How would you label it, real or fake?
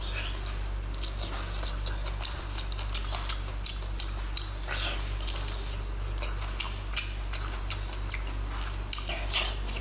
real